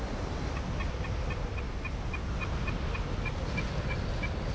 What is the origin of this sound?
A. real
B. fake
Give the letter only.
A